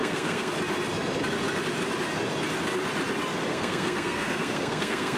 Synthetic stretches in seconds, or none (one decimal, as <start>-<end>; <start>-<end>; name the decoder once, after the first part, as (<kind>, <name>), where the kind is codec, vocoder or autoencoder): 0.0-0.5 (codec, SNAC); 3.5-5.2